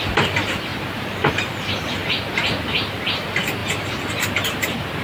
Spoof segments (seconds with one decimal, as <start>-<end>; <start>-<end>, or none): 0.0-0.7; 1.4-2.0; 2.6-3.6; 4.2-5.0